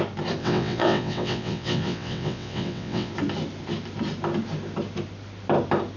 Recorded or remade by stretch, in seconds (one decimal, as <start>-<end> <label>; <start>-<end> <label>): 0.0-0.4 recorded; 0.4-3.1 remade; 3.1-6.0 recorded